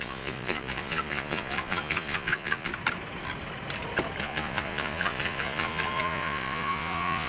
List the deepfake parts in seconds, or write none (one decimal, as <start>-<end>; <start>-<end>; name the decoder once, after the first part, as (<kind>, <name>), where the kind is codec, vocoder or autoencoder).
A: 0.0-2.7 (vocoder, Vocos); 4.2-7.3